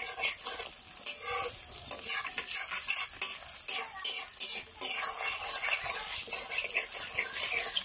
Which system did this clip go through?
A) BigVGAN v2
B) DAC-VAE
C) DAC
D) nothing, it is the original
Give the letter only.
D